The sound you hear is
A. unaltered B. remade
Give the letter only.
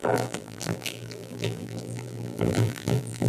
B